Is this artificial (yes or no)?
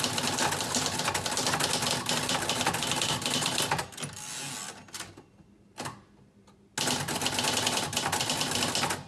no